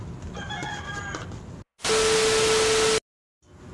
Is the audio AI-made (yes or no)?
no